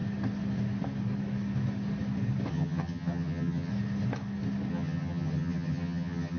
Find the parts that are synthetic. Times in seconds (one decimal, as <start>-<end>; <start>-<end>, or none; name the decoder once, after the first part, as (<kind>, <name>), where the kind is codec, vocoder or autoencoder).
2.5-3.7 (vocoder, HiFi-GAN); 4.7-6.4